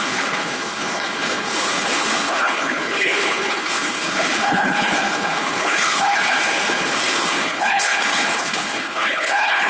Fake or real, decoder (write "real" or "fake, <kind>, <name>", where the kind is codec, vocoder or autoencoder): fake, codec, HILCodec